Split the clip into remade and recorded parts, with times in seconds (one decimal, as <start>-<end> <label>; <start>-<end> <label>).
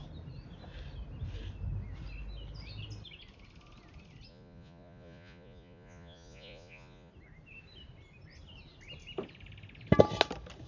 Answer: 0.0-4.3 recorded; 4.3-7.1 remade; 7.1-10.7 recorded